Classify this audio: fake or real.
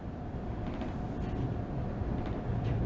real